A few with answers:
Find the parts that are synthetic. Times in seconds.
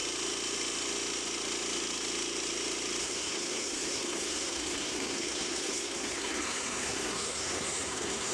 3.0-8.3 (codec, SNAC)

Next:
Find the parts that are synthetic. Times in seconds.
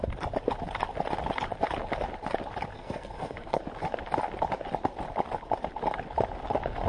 2.7-3.6 (codec, SNAC)